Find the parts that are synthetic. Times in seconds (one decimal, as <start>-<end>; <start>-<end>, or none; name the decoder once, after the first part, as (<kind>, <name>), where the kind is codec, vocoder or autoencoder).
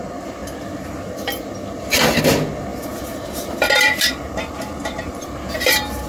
2.7-6.1 (vocoder, BigVGAN v2)